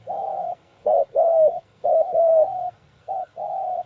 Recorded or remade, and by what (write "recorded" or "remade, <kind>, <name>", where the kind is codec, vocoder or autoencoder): remade, codec, SNAC